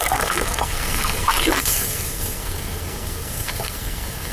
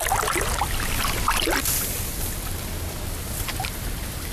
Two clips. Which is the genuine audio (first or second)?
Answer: second